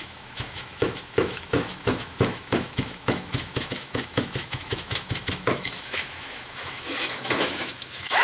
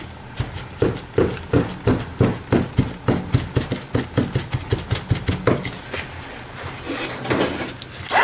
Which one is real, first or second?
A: second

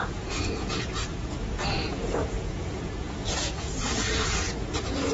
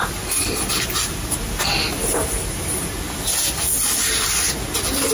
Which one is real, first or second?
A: second